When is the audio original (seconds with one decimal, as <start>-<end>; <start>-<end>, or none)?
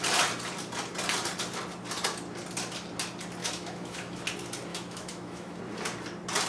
0.0-3.4; 4.2-4.7; 5.6-6.5